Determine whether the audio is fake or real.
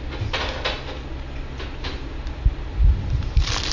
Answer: real